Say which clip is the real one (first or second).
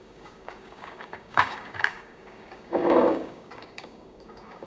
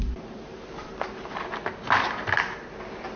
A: second